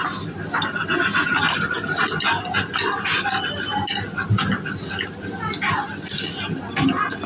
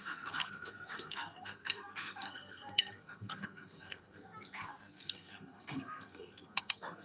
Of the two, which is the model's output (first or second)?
second